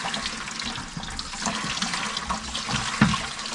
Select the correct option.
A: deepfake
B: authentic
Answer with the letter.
B